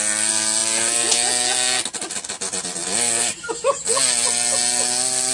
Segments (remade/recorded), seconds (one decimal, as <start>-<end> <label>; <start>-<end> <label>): 0.0-5.3 recorded